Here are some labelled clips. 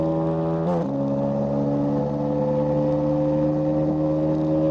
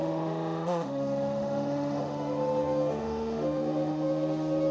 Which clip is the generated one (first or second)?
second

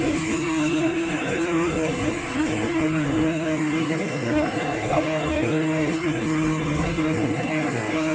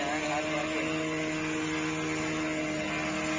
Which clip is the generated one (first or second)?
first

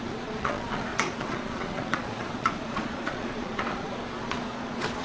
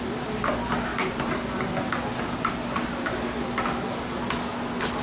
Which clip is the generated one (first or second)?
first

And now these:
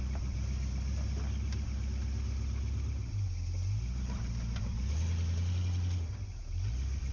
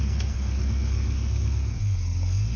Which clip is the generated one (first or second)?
second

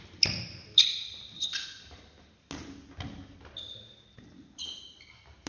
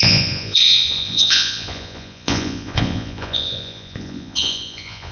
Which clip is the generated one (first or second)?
second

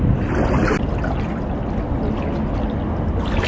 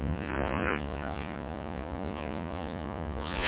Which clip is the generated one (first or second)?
second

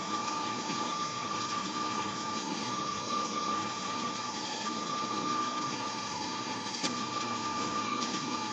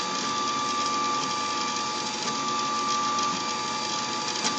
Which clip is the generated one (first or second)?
first